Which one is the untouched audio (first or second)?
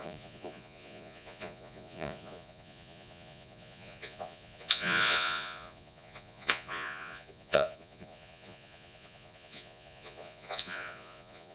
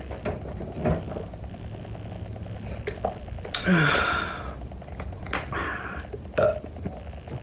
second